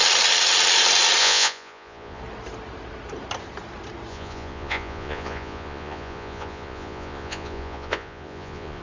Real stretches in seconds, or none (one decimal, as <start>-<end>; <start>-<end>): 0.0-1.2; 2.2-4.1

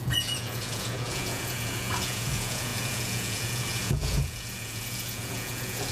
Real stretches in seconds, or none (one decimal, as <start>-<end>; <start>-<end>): none